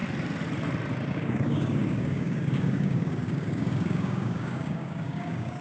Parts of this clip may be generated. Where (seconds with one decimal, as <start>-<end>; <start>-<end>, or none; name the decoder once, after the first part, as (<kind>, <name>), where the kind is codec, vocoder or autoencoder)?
1.1-5.6 (codec, DAC)